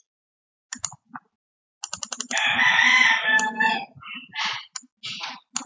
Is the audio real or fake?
real